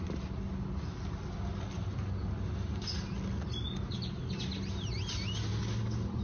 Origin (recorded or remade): recorded